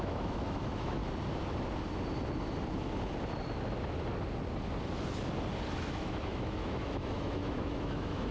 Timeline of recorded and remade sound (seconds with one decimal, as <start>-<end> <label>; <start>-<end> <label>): 0.0-1.0 remade; 1.0-5.7 recorded; 5.7-8.3 remade